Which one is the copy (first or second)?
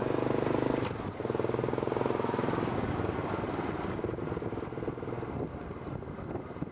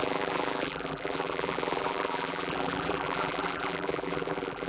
second